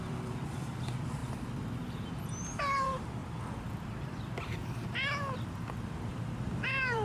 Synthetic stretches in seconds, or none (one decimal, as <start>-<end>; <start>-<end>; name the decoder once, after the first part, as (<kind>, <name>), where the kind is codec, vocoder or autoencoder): 0.0-1.2 (vocoder, BigVGAN v2); 2.6-7.0